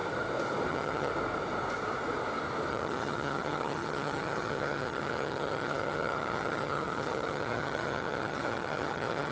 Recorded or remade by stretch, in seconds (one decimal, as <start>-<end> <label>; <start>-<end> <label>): 0.0-0.7 recorded; 0.7-1.1 remade; 1.1-2.7 recorded; 2.7-9.3 remade